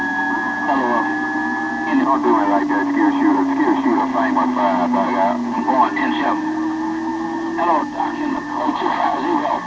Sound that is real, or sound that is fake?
real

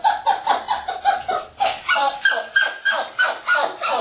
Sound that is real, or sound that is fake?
real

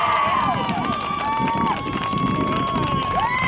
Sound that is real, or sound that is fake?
real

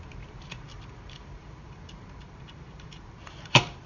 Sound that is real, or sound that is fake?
fake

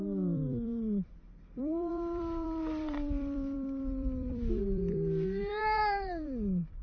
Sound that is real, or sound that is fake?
fake